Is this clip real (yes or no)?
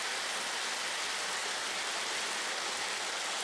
yes